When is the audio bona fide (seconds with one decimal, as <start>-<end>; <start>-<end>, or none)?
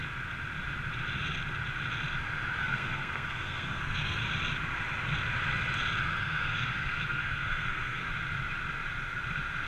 0.0-2.6; 4.2-6.2; 8.1-9.7